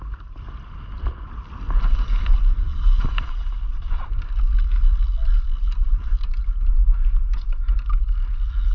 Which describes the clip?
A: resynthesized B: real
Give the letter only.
B